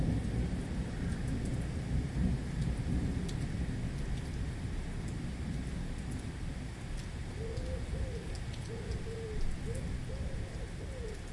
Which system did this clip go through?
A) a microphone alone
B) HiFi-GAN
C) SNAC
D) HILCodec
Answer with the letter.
A